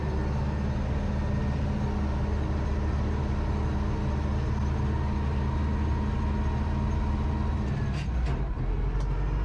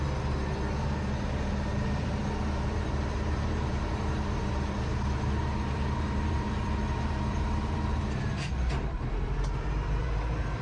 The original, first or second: first